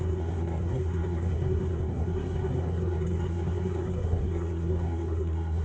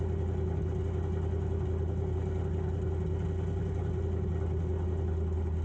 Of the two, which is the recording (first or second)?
second